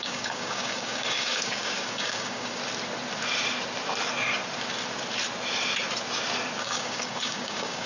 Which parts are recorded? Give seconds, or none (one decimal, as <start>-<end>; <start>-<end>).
2.6-6.6